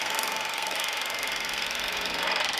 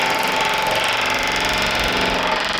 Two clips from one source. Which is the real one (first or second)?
second